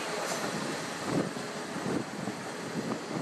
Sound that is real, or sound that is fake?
real